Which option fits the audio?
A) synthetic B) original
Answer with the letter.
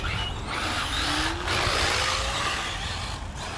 B